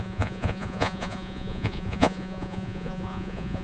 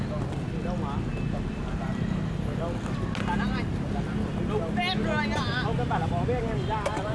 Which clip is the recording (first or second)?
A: second